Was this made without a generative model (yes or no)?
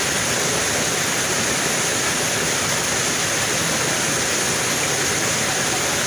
yes